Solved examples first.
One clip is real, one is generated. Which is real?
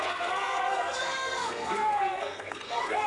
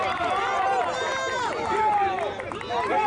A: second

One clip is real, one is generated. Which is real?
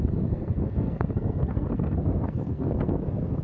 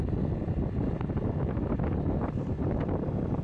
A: second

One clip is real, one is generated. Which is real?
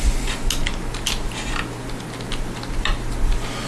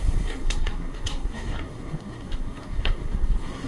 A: first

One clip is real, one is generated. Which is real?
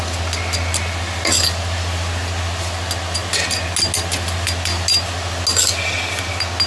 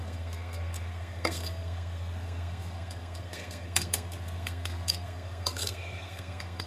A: first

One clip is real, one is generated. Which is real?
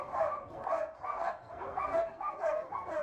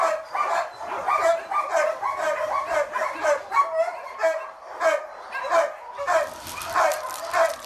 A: second